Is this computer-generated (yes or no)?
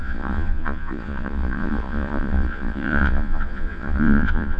yes